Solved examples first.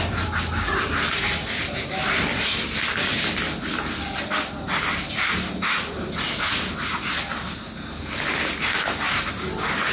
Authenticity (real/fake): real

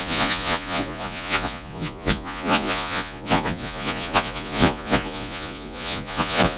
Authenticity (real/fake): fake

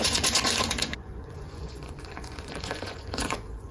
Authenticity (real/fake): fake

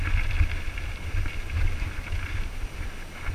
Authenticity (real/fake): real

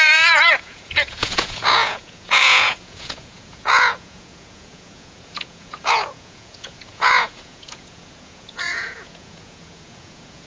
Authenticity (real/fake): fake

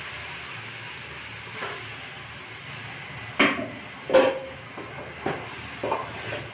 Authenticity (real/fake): real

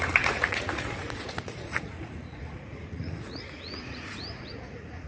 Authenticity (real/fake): fake